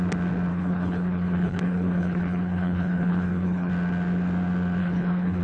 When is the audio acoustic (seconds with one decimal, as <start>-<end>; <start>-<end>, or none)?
0.0-0.5; 3.7-4.8